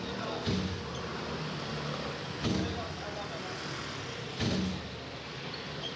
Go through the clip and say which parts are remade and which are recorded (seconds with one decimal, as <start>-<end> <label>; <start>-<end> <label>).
0.0-6.0 recorded